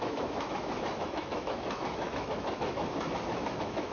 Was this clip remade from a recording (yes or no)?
yes